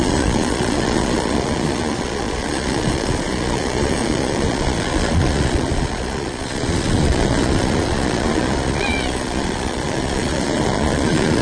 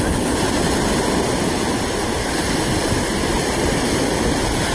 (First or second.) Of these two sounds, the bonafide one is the second